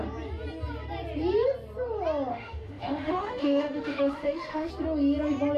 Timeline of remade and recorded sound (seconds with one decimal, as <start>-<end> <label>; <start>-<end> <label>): 0.0-2.3 recorded; 2.3-4.7 remade; 4.7-5.6 recorded